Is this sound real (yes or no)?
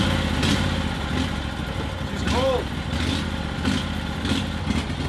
yes